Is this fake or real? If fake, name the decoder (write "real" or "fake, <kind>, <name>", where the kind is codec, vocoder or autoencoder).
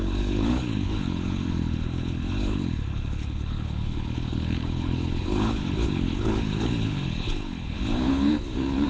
fake, codec, HILCodec